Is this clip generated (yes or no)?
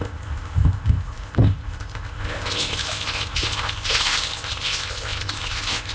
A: yes